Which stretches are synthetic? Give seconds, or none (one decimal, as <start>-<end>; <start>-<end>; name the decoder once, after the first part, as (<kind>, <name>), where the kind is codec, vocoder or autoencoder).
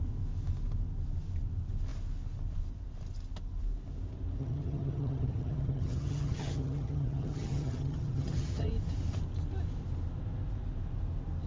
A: 4.4-8.7 (vocoder, HiFi-GAN)